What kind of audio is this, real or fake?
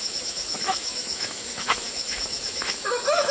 fake